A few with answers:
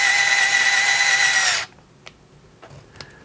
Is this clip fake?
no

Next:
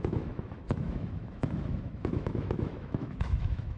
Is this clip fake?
yes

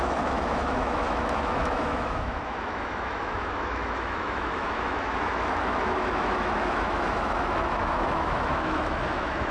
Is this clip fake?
yes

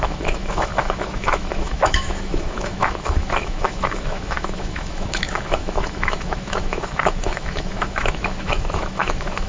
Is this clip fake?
yes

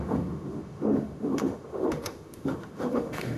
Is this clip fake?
yes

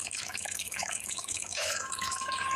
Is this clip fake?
yes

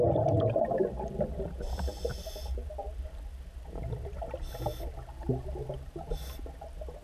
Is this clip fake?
no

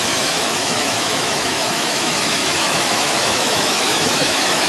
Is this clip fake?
yes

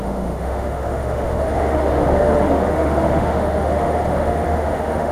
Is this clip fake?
yes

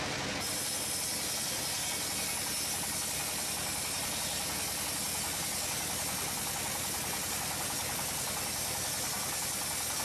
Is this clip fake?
no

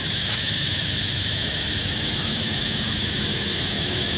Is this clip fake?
yes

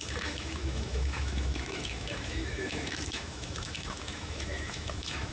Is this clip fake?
yes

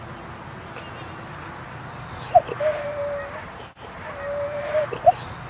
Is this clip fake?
no